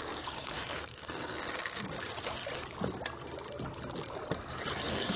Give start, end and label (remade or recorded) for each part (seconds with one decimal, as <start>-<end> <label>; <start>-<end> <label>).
0.0-2.4 remade; 2.4-4.5 recorded; 4.5-5.2 remade